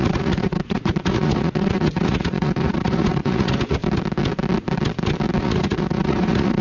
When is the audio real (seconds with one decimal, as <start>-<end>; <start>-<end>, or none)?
3.8-5.4